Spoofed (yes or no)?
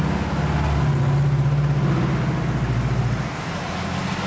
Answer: no